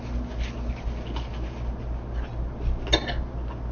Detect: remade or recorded recorded